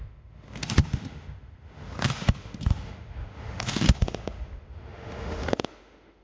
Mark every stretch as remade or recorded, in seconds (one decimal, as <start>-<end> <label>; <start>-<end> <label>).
0.0-6.2 remade